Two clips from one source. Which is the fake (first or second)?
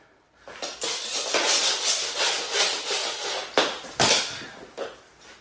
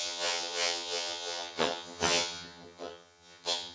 second